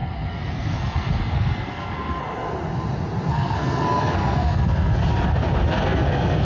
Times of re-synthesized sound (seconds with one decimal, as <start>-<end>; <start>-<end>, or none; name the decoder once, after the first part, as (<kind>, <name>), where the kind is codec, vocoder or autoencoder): 0.0-2.2 (codec, SNAC); 3.3-5.0; 5.7-6.4